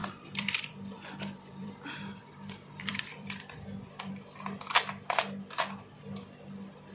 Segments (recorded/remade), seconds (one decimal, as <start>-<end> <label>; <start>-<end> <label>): 0.0-4.1 remade; 4.1-6.9 recorded